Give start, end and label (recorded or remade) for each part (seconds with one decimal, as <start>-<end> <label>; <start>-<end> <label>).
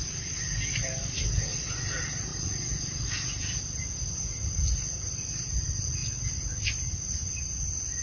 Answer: 0.0-8.0 recorded